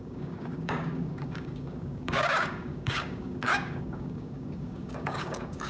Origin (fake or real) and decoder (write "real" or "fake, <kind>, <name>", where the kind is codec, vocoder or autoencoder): fake, codec, DAC